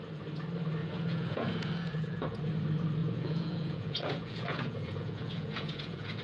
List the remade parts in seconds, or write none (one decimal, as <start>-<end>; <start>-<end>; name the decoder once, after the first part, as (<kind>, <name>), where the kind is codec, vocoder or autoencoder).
0.8-2.4 (vocoder, Vocos); 3.0-6.2